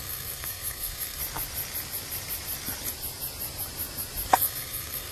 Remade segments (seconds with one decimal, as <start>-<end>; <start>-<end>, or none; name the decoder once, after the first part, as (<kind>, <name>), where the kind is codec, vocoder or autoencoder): 0.0-1.2 (codec, SNAC); 4.3-5.1